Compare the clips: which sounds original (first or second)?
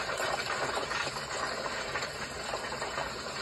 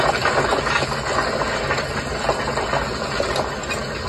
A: second